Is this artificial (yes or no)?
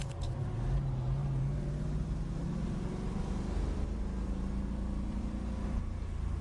no